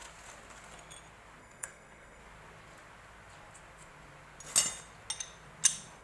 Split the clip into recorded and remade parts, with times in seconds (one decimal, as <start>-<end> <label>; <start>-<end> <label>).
0.0-1.4 recorded; 1.4-2.2 remade; 2.2-6.0 recorded

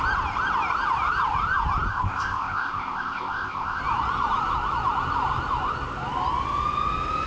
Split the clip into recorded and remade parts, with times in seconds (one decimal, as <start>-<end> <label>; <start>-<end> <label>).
0.0-1.9 recorded; 1.9-3.8 remade; 3.8-7.3 recorded

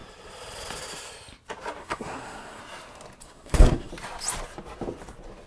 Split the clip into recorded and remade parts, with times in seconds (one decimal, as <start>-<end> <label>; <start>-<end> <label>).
0.0-1.8 recorded; 1.8-2.6 remade; 2.6-3.2 recorded; 3.2-3.9 remade; 3.9-5.5 recorded